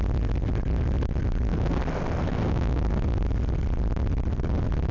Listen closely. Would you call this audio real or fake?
real